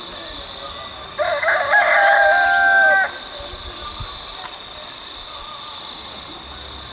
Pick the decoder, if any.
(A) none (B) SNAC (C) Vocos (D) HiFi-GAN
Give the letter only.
A